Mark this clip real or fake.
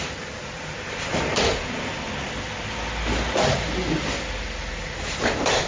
real